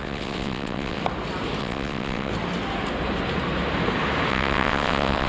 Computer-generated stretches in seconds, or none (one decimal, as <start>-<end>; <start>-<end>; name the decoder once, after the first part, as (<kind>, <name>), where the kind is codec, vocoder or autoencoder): 0.0-1.0 (vocoder, WaveNeXt); 1.6-2.3; 4.3-5.3